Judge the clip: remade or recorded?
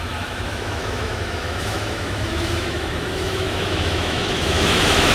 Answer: remade